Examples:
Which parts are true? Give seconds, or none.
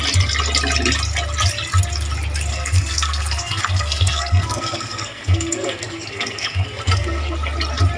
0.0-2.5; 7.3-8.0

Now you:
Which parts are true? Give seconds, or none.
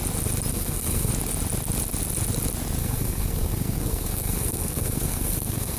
0.0-0.5; 1.1-2.8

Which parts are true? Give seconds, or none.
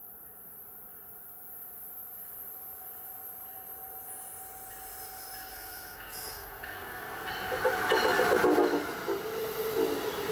0.0-5.5; 7.3-10.3